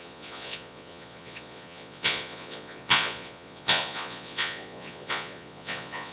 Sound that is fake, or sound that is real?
fake